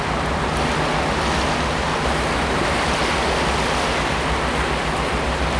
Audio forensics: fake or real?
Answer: real